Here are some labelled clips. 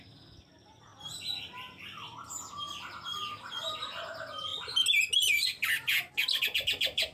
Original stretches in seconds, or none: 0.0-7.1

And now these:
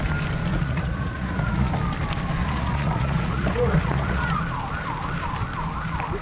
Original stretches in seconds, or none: 0.0-0.5; 1.7-2.4; 4.4-6.2

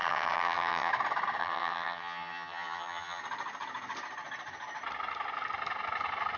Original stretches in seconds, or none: 0.9-1.4; 3.2-6.4